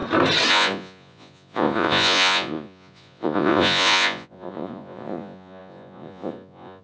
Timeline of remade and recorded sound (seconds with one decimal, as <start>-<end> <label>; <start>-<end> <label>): 0.0-0.5 recorded; 0.5-6.8 remade